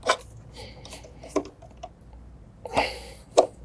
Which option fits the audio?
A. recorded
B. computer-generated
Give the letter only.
A